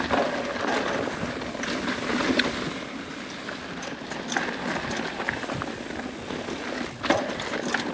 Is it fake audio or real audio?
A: real